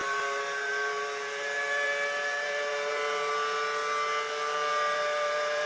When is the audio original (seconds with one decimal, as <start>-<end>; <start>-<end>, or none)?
3.3-4.7